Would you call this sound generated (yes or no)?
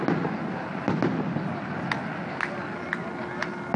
no